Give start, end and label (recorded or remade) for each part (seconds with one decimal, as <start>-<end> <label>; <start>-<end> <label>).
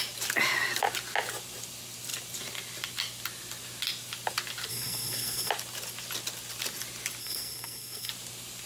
0.0-4.7 recorded; 4.7-5.5 remade; 5.5-7.2 recorded; 7.2-8.1 remade; 8.1-8.7 recorded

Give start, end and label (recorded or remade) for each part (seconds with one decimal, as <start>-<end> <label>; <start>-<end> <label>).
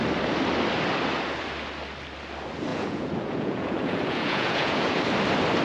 0.0-2.7 recorded; 2.7-5.0 remade; 5.0-5.6 recorded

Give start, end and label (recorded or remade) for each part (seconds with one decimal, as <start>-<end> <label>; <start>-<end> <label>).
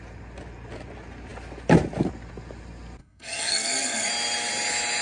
0.0-3.0 recorded; 3.0-4.1 remade; 4.1-5.0 recorded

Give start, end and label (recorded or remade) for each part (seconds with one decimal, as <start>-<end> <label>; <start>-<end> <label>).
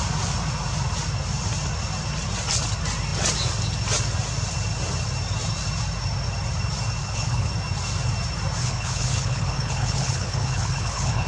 0.0-7.0 recorded; 7.0-7.5 remade; 7.5-8.6 recorded; 8.6-11.3 remade